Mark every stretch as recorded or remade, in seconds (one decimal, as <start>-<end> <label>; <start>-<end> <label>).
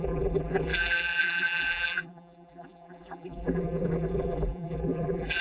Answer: 0.0-5.4 remade